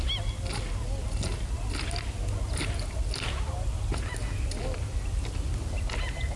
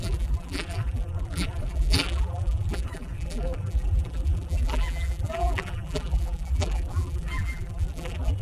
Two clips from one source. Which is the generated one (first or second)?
second